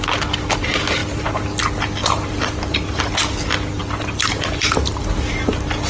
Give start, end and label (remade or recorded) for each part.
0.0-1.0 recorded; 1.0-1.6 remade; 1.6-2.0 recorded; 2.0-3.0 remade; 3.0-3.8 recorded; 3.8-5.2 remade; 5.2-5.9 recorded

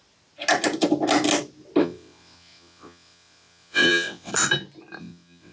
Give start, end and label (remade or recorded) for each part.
0.0-1.8 recorded; 1.8-4.3 remade; 4.3-5.0 recorded; 5.0-5.5 remade

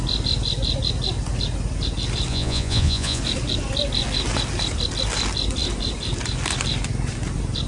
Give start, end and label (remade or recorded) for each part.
0.0-2.3 recorded; 2.3-3.2 remade; 3.2-7.7 recorded

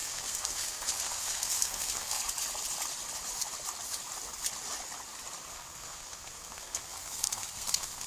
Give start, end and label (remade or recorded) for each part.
0.0-2.2 remade; 2.2-5.5 recorded; 5.5-8.1 remade

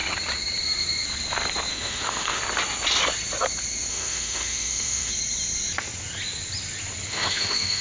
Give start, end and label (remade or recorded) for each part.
0.0-1.7 recorded; 1.7-2.4 remade; 2.4-3.9 recorded; 3.9-5.1 remade; 5.1-7.1 recorded; 7.1-7.8 remade

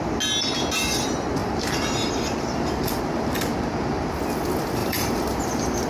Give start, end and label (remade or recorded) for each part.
0.0-1.4 recorded; 1.4-3.0 remade; 3.0-4.8 recorded; 4.8-5.5 remade; 5.5-5.9 recorded